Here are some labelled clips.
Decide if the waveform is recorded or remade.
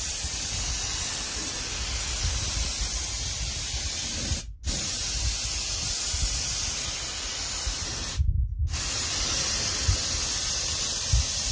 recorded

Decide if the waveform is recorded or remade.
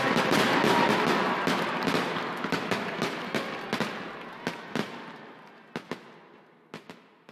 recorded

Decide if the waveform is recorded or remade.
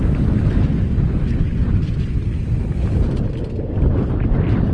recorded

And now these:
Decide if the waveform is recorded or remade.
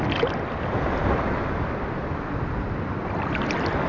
recorded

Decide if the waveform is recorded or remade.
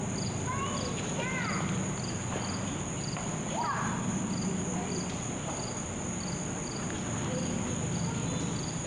recorded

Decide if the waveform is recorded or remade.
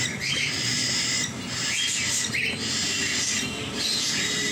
recorded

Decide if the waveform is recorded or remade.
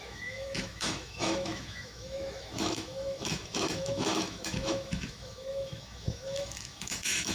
remade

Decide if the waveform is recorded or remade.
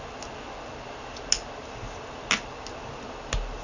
recorded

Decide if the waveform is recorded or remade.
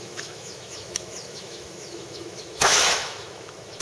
remade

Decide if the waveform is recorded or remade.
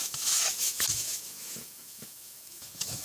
remade